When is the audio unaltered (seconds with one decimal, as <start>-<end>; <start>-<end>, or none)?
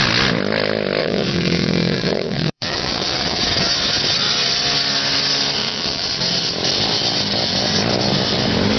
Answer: 0.0-1.0; 3.4-5.6; 6.2-8.8